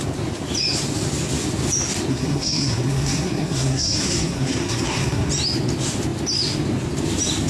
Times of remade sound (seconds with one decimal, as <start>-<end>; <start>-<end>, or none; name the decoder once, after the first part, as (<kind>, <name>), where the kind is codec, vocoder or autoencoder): 2.1-5.3 (codec, SNAC)